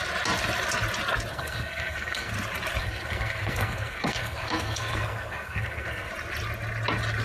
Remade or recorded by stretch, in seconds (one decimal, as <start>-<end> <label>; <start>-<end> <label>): 0.0-1.3 recorded; 1.3-2.3 remade; 2.3-2.8 recorded; 2.8-6.1 remade; 6.1-7.2 recorded